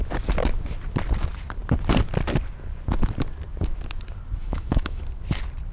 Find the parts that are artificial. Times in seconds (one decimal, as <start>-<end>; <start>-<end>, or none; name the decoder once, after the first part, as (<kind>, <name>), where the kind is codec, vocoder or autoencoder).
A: 4.4-5.0 (autoencoder, DAC-VAE)